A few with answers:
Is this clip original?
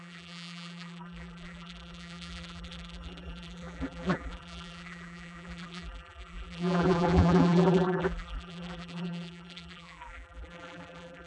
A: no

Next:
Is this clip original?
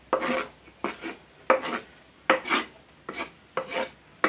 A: yes